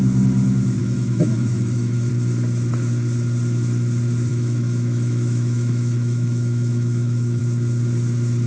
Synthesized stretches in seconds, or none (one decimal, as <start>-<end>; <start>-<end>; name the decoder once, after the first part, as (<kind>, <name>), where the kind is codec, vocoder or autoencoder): 0.8-2.1 (autoencoder, DAC-VAE); 4.3-7.4